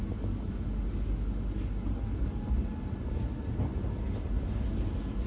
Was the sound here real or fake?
real